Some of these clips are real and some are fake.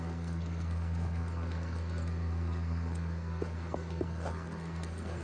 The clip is fake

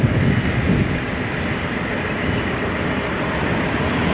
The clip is real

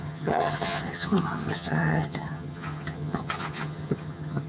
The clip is fake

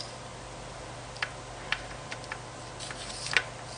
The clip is real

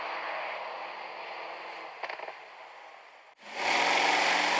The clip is real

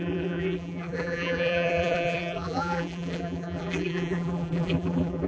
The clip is fake